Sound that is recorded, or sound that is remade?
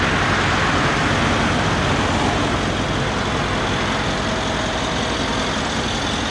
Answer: recorded